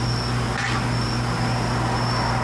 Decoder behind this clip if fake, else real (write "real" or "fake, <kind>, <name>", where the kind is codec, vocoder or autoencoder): real